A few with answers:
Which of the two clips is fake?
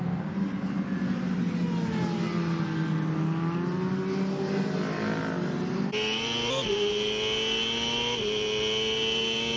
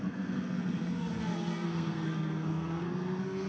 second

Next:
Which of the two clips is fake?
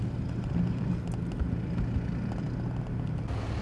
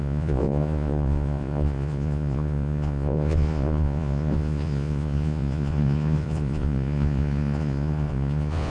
second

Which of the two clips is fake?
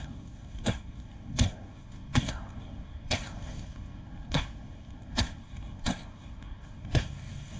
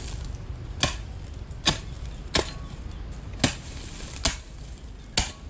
first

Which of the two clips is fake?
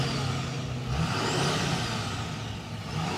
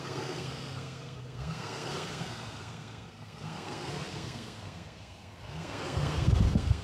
second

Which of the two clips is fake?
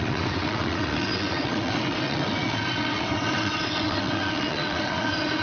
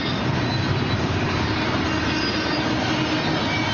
first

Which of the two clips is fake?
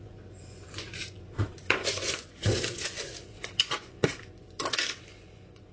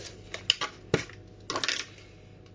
first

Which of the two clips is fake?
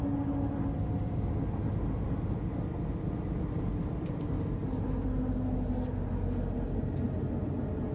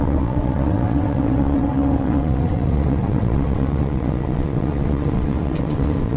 second